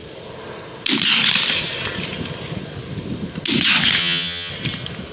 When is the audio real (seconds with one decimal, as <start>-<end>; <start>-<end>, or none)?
0.0-4.0; 4.5-5.1